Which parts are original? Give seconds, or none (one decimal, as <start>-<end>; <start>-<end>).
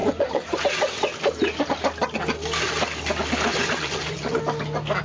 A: 0.6-3.5; 4.4-5.0